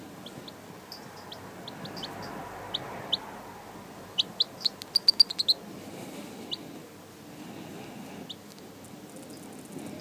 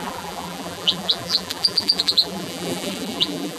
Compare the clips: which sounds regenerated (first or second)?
second